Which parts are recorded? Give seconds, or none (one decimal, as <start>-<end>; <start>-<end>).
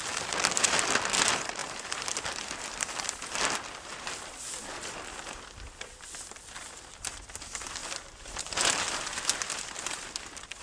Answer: 0.0-10.6